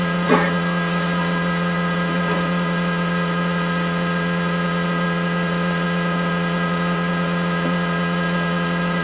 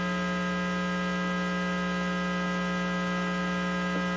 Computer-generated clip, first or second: first